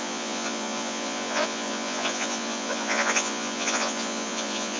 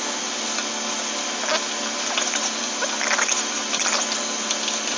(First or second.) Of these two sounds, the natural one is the second